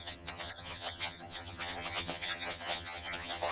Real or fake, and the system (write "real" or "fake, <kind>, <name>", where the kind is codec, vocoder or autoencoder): fake, vocoder, HiFi-GAN